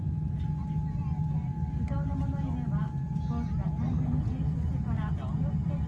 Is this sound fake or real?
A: real